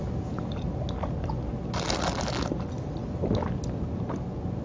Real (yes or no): yes